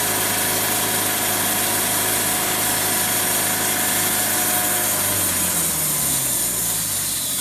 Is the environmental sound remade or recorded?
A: recorded